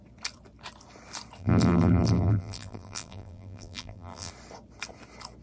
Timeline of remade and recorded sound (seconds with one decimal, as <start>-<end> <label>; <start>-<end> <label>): 0.0-1.4 recorded; 1.4-4.3 remade; 4.3-5.4 recorded